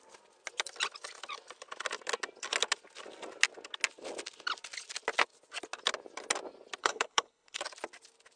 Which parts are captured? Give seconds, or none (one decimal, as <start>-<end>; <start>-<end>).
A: 0.0-6.8; 7.6-8.4